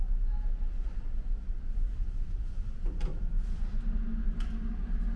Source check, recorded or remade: recorded